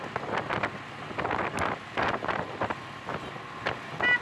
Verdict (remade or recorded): recorded